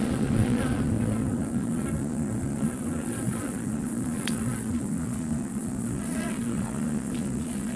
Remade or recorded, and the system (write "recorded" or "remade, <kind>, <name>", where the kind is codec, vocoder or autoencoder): remade, vocoder, Vocos